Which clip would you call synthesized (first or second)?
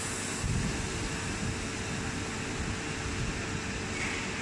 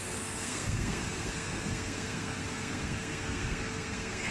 second